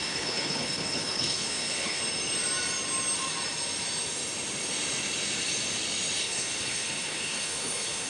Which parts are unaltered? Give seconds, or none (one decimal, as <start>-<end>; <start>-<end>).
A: 2.0-6.2